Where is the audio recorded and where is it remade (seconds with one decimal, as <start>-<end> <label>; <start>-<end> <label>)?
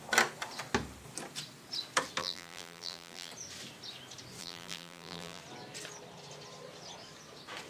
0.0-2.2 recorded; 2.2-3.3 remade; 3.3-4.4 recorded; 4.4-5.4 remade; 5.4-7.7 recorded